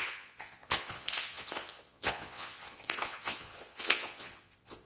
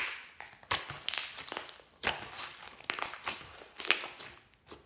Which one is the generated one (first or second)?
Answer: first